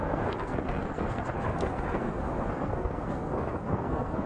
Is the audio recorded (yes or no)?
no